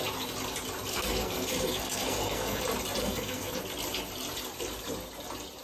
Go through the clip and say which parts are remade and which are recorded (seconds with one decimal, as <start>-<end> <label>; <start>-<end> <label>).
0.0-0.9 recorded; 0.9-2.6 remade; 2.6-3.0 recorded; 3.0-3.6 remade; 3.6-5.6 recorded

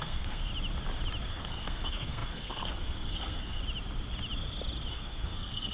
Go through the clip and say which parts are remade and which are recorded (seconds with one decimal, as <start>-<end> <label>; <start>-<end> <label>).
0.0-0.5 remade; 0.5-1.3 recorded; 1.3-3.6 remade; 3.6-4.9 recorded; 4.9-5.7 remade

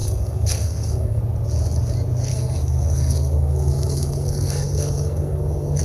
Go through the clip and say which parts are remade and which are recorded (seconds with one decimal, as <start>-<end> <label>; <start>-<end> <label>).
0.0-1.2 remade; 1.2-2.3 recorded; 2.3-5.8 remade

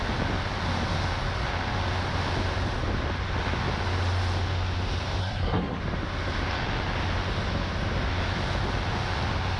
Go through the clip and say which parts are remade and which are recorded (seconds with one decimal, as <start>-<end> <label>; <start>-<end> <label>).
0.0-5.2 recorded; 5.2-5.8 remade; 5.8-9.6 recorded

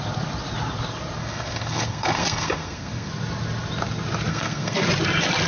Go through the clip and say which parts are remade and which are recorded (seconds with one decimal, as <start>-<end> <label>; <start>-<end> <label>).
0.0-1.2 recorded; 1.2-3.1 remade; 3.1-4.3 recorded; 4.3-4.8 remade; 4.8-5.5 recorded

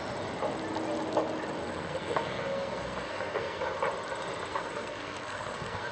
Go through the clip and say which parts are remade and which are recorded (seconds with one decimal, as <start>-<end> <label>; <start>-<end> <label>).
0.0-1.6 recorded; 1.6-3.6 remade; 3.6-4.5 recorded; 4.5-5.9 remade